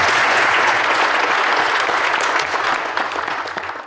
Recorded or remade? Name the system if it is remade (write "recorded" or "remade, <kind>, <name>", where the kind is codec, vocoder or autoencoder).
remade, vocoder, Vocos